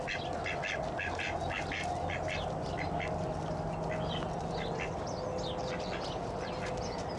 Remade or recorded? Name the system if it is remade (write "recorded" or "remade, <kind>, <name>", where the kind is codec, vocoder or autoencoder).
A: recorded